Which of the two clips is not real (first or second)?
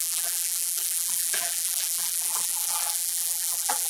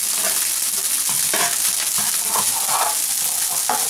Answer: first